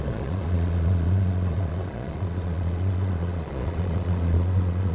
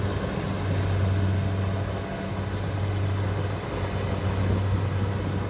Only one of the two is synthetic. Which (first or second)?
first